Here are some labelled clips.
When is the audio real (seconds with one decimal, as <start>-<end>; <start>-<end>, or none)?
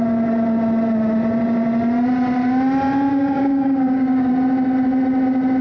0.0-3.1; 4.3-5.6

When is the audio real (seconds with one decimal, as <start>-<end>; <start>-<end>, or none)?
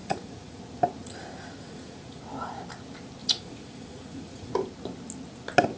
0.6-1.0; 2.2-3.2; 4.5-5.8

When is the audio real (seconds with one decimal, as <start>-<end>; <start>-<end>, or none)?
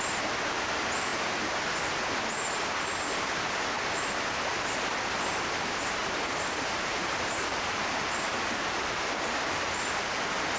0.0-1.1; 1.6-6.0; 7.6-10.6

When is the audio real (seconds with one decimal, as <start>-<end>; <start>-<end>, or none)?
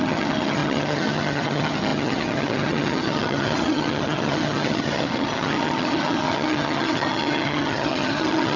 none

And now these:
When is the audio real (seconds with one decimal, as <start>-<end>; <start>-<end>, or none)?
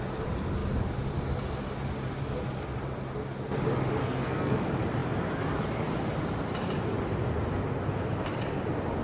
0.0-4.0; 4.6-9.0